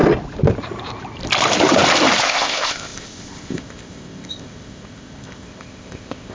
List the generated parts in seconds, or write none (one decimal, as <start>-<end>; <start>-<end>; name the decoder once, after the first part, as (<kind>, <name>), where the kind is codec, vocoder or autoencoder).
2.2-6.3 (codec, ZipCodec)